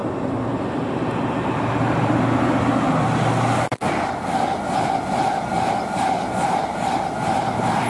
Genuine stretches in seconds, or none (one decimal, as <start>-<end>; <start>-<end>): 0.0-7.9